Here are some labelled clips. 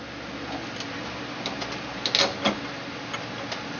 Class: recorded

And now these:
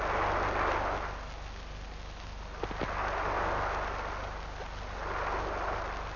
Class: recorded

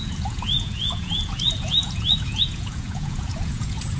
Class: remade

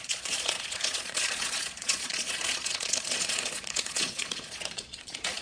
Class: remade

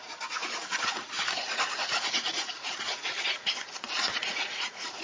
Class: remade